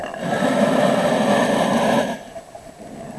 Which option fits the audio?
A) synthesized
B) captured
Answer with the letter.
B